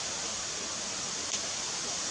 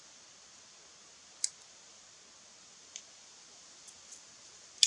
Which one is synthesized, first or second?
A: first